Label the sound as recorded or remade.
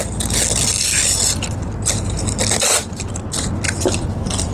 recorded